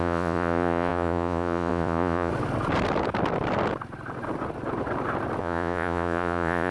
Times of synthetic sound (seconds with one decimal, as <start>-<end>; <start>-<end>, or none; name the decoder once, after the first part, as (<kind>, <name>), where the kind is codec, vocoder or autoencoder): 0.0-2.3 (vocoder, Vocos); 5.4-6.7